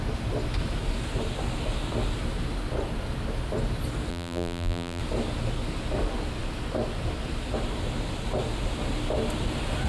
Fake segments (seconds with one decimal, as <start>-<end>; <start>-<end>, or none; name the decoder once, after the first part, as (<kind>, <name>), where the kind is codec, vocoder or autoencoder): 4.1-5.0 (vocoder, BigVGAN v2)